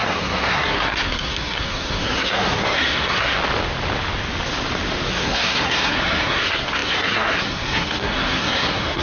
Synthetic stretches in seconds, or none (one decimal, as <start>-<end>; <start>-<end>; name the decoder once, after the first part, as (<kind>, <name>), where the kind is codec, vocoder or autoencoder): 0.0-3.3 (codec, SNAC); 5.1-9.0